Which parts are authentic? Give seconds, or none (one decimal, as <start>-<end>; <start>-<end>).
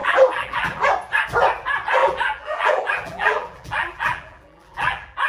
0.9-2.0